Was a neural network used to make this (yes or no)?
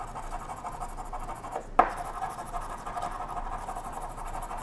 no